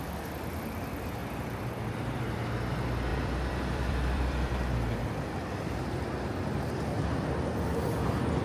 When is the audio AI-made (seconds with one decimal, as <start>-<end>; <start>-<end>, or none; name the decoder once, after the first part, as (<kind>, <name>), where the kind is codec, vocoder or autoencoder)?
3.1-5.7 (vocoder, BigVGAN v2)